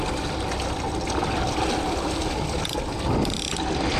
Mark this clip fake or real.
real